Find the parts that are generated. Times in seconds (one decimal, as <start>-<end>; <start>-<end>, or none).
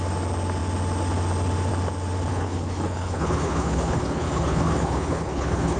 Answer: 2.3-5.8